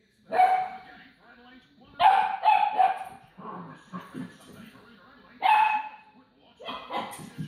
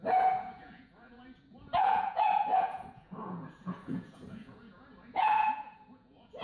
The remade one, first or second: second